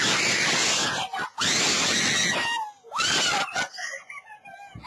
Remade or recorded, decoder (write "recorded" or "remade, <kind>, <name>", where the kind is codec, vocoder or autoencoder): recorded